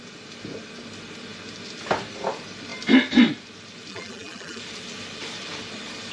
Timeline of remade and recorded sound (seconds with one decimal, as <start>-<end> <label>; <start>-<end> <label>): 0.0-3.9 recorded; 3.9-4.6 remade; 4.6-6.1 recorded